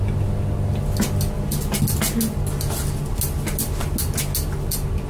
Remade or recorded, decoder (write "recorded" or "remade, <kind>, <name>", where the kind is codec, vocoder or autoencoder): recorded